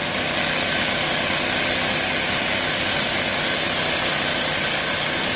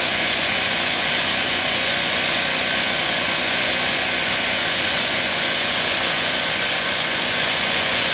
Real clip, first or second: first